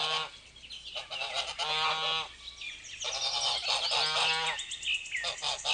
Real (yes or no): yes